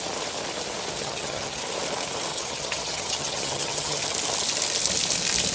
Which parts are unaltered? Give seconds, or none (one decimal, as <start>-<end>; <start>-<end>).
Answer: 0.0-1.0; 1.6-2.3; 4.0-5.5